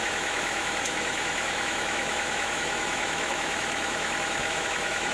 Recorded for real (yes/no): no